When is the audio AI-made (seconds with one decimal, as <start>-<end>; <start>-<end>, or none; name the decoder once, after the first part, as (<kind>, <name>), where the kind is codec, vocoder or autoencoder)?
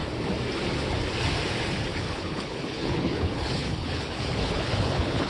1.9-5.3 (codec, HILCodec)